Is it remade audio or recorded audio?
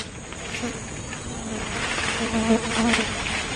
recorded